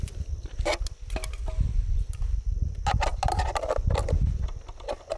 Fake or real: real